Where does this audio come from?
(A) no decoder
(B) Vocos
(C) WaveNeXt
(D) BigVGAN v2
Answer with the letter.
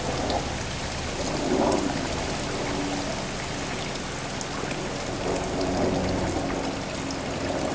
A